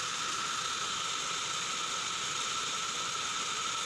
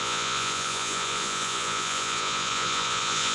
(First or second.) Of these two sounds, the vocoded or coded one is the second